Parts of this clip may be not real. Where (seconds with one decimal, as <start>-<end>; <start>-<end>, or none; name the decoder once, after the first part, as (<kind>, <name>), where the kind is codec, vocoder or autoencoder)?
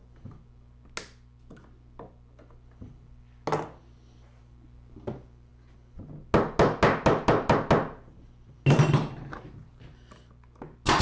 none